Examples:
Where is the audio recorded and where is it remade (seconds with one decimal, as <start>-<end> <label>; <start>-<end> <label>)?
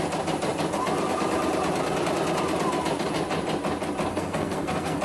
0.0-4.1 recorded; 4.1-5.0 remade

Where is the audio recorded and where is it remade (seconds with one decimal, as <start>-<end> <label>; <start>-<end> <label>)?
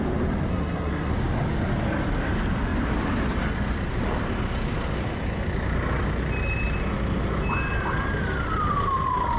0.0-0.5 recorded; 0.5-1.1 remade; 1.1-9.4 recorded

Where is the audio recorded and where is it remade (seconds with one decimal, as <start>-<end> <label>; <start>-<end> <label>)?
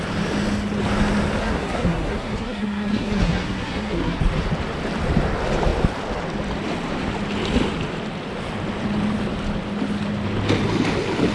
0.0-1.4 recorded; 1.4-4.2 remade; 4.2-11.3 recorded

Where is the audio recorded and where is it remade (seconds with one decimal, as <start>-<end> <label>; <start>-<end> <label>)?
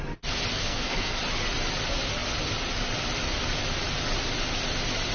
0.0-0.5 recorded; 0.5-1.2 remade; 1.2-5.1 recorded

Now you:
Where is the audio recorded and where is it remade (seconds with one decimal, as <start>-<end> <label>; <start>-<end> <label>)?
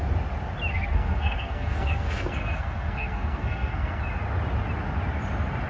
0.0-0.7 recorded; 0.7-4.0 remade; 4.0-5.7 recorded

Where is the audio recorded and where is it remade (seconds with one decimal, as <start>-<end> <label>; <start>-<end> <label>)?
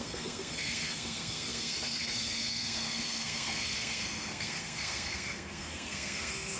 0.0-6.6 remade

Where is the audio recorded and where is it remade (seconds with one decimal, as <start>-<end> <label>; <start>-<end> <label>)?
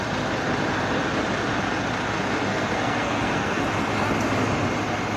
0.0-2.5 recorded; 2.5-3.6 remade; 3.6-5.2 recorded